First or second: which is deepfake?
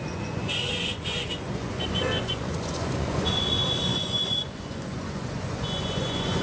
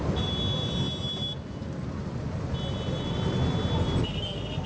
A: first